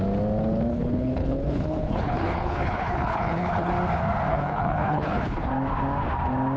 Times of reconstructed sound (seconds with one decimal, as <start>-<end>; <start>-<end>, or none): 0.7-3.7; 4.3-5.5